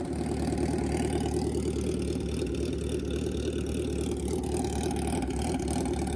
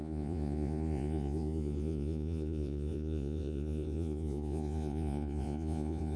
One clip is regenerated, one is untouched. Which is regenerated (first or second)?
second